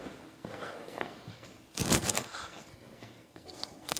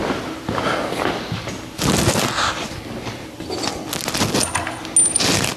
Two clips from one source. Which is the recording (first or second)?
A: second